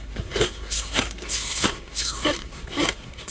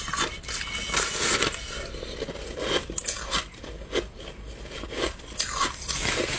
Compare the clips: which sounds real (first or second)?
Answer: second